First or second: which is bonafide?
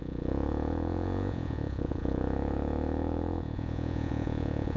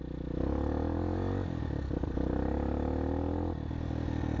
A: second